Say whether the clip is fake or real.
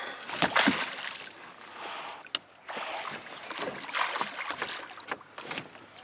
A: real